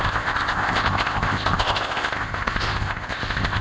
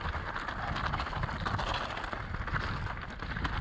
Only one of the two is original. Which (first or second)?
second